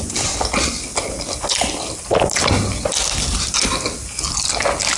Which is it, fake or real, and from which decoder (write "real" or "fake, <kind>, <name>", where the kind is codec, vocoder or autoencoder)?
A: real